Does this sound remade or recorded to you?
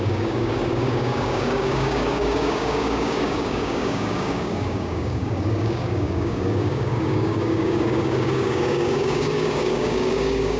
remade